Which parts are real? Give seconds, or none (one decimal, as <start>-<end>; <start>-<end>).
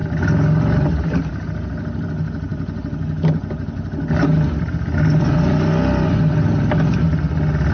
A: 0.0-7.7